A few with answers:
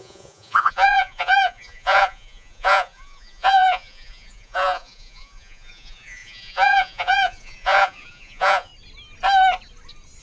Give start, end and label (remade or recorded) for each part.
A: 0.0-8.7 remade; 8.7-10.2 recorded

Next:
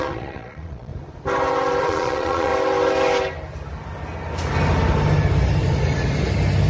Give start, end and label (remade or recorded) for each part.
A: 0.0-0.9 remade; 0.9-1.8 recorded; 1.8-2.5 remade; 2.5-6.7 recorded

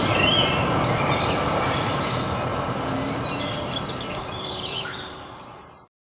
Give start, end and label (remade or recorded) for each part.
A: 0.0-2.5 remade; 2.5-3.7 recorded; 3.7-6.0 remade

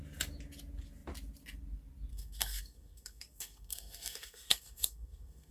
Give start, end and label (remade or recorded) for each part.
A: 0.0-2.1 recorded; 2.1-5.5 remade

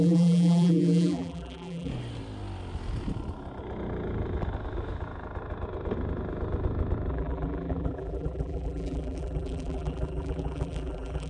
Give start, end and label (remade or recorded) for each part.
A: 0.0-1.9 remade; 1.9-7.1 recorded; 7.1-11.3 remade